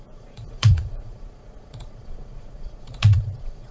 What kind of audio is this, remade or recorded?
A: remade